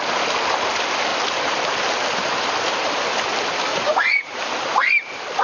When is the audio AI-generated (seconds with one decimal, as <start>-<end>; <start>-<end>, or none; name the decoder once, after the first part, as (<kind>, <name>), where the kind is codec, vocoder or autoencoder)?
3.7-4.4 (vocoder, Vocos)